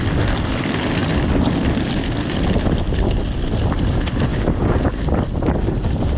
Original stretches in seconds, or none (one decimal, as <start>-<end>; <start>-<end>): 0.0-4.3; 5.0-6.2